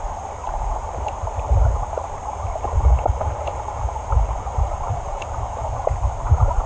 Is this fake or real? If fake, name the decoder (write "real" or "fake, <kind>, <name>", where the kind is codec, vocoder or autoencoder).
real